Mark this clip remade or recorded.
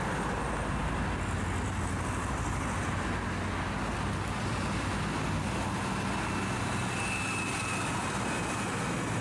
recorded